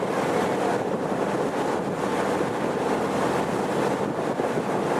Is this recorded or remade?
recorded